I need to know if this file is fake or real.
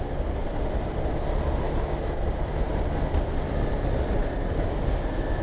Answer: real